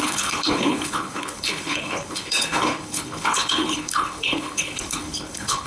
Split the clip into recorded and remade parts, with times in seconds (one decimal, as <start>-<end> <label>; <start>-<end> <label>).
0.0-5.7 remade